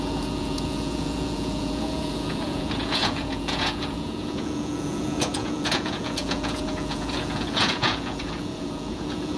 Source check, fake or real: fake